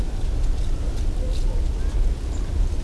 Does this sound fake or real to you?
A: real